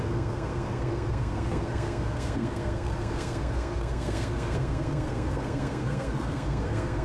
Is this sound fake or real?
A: fake